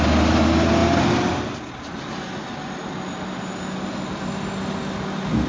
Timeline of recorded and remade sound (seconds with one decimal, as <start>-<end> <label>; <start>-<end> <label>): 0.0-5.5 recorded